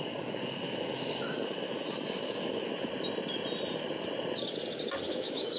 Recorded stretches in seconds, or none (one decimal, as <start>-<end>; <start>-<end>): 2.9-5.0